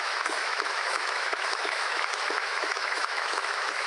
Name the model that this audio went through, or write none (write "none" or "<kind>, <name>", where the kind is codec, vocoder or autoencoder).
autoencoder, DAC-VAE